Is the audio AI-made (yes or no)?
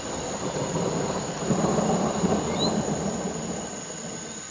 no